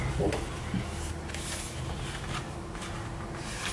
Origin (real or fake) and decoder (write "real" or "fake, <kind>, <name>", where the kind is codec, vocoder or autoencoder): real